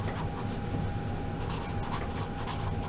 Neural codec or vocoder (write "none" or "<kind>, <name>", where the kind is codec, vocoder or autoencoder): none